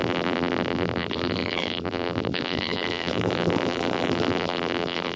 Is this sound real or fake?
fake